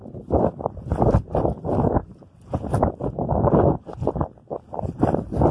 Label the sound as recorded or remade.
recorded